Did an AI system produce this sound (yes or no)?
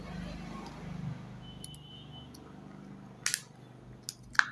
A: no